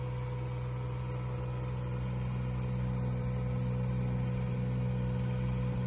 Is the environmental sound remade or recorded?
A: recorded